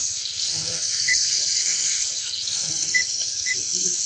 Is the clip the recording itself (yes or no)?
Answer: no